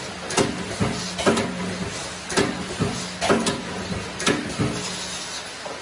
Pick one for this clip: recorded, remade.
recorded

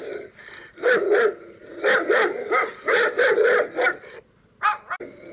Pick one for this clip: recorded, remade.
recorded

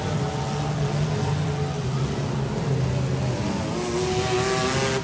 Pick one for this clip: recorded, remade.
recorded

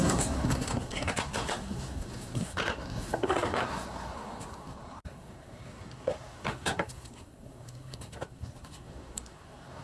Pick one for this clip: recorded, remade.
remade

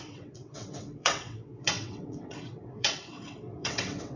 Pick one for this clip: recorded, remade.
remade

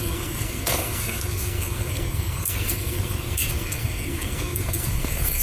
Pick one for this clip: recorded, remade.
remade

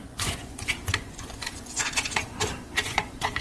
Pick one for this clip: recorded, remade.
remade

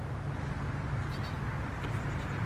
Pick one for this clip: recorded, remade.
recorded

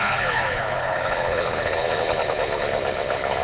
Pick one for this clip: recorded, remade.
remade